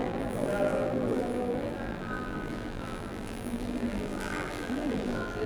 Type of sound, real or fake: fake